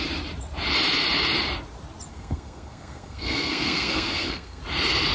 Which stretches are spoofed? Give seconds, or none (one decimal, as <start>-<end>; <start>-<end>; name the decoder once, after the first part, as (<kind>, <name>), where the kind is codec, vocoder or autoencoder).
2.1-4.6 (codec, SNAC)